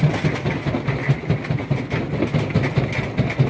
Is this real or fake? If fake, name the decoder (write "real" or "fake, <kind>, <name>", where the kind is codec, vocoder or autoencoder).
real